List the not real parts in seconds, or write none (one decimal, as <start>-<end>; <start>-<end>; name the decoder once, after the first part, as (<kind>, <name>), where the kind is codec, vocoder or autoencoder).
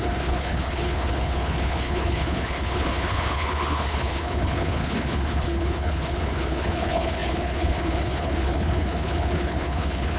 0.0-10.2 (codec, HILCodec)